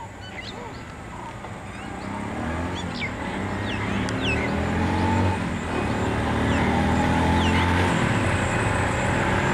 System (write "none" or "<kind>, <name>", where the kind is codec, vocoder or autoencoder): none